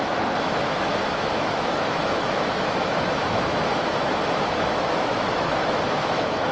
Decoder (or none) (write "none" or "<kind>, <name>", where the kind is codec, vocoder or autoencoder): autoencoder, DAC-VAE